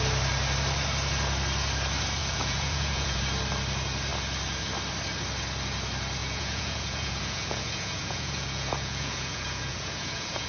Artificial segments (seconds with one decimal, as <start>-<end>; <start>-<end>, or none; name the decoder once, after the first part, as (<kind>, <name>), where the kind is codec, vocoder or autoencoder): 2.2-3.2 (vocoder, Vocos); 6.2-10.5